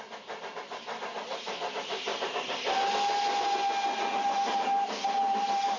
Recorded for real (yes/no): yes